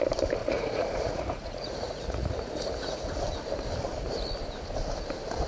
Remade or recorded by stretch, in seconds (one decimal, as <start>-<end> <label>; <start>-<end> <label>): 0.0-0.4 recorded; 0.4-3.2 remade; 3.2-5.5 recorded